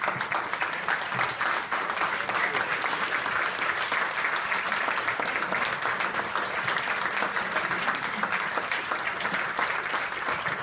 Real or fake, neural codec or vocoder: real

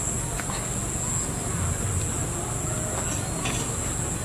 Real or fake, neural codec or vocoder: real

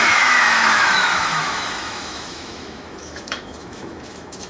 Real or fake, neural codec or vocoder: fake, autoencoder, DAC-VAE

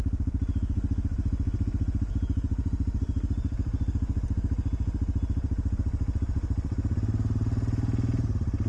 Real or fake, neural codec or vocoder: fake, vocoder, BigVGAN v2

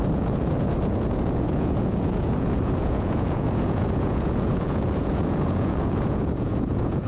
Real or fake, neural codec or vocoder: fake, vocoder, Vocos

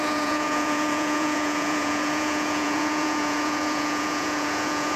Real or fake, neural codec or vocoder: fake, vocoder, Vocos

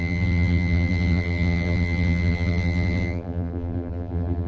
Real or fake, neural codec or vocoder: fake, vocoder, BigVGAN v2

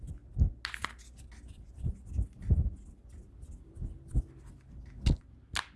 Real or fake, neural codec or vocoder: real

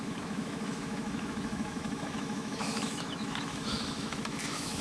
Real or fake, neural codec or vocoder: fake, autoencoder, DAC-VAE